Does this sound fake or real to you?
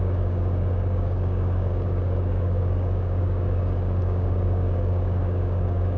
fake